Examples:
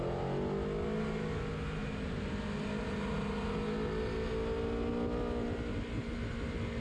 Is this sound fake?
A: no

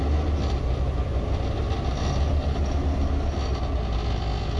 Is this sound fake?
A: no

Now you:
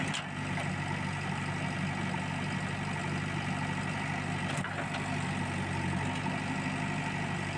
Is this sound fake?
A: no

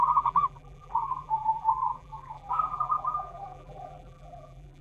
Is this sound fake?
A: yes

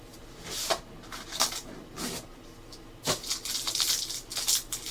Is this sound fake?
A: no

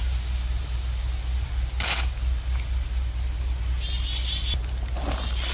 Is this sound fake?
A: no